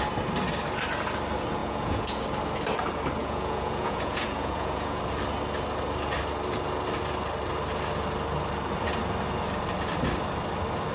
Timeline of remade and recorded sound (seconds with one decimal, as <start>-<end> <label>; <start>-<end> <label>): 0.0-1.6 recorded; 1.6-2.2 remade; 2.2-3.2 recorded; 3.2-5.0 remade; 5.0-10.9 recorded